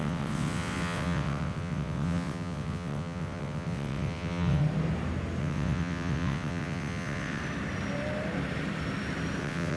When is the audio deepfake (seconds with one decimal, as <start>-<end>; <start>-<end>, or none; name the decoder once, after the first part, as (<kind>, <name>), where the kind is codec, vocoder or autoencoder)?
0.0-4.6 (vocoder, WaveNeXt); 5.4-7.4; 9.4-9.8